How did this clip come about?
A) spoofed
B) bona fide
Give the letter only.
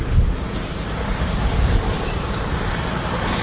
A